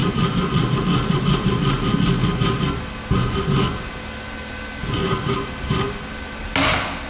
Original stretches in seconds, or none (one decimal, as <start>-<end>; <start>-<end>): 1.4-4.8; 5.3-7.1